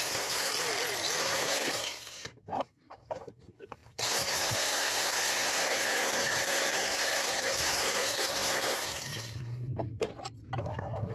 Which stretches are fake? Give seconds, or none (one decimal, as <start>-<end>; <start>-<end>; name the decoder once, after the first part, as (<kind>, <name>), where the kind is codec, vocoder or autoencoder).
0.0-0.5 (codec, SNAC); 1.2-10.1; 10.6-11.1